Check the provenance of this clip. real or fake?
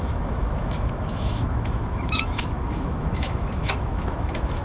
fake